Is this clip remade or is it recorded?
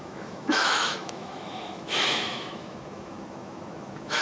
remade